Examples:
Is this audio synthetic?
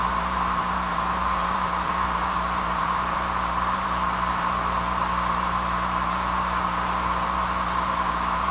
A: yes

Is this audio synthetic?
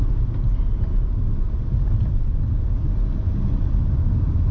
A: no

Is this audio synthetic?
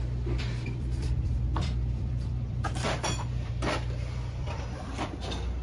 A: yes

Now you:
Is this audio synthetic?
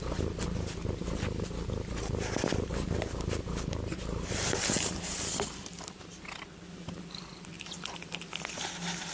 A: yes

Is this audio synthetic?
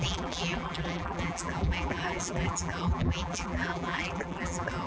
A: yes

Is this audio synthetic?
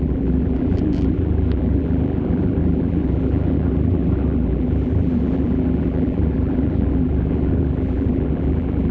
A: yes